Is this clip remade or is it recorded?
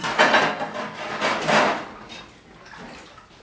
recorded